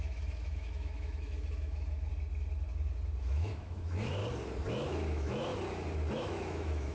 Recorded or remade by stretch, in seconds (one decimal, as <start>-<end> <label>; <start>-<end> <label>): 0.0-2.1 remade; 2.1-3.2 recorded; 3.2-4.2 remade; 4.2-4.7 recorded; 4.7-5.5 remade; 5.5-6.1 recorded; 6.1-6.9 remade

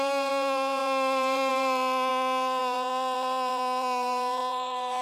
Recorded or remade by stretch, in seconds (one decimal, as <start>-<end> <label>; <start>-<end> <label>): 0.0-5.0 remade

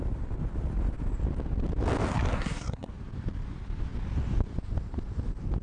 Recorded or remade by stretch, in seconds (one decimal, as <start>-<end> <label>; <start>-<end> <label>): 0.0-2.1 recorded; 2.1-2.9 remade; 2.9-5.6 recorded

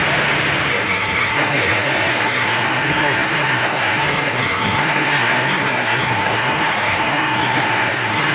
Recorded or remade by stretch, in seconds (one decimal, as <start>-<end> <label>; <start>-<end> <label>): 0.0-0.7 recorded; 0.7-8.3 remade

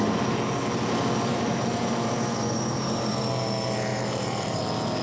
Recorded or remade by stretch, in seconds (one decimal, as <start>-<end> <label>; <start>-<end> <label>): 0.0-1.3 recorded; 1.3-3.2 remade; 3.2-3.9 recorded; 3.9-4.6 remade; 4.6-5.0 recorded

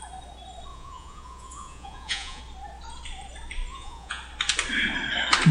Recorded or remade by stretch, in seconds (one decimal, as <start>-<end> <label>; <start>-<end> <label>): 0.0-0.7 recorded; 0.7-2.4 remade; 2.4-3.7 recorded; 3.7-4.2 remade; 4.2-5.5 recorded

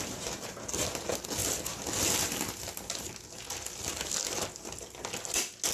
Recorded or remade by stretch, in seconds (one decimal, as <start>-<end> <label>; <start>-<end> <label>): 0.0-5.7 recorded

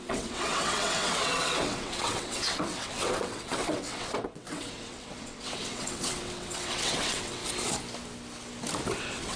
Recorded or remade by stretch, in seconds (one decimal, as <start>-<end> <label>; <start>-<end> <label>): 0.0-7.4 remade; 7.4-9.0 recorded; 9.0-9.4 remade